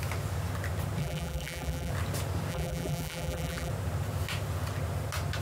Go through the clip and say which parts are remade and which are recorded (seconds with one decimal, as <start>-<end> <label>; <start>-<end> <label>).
0.0-1.0 recorded; 1.0-1.9 remade; 1.9-2.5 recorded; 2.5-3.7 remade; 3.7-5.4 recorded